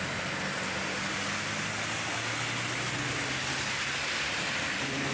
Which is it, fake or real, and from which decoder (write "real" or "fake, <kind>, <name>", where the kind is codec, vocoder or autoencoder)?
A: real